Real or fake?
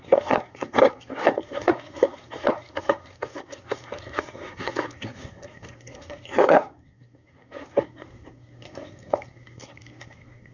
fake